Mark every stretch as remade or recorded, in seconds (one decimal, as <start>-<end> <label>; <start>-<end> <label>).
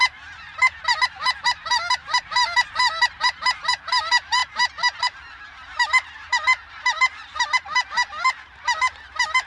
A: 0.0-4.4 remade; 4.4-5.0 recorded; 5.0-9.5 remade